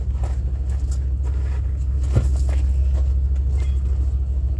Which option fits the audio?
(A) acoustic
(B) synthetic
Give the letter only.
A